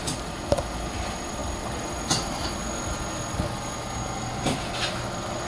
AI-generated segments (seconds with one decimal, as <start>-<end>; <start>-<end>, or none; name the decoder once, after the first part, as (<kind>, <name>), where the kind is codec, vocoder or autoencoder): none